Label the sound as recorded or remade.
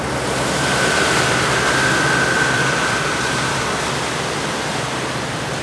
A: remade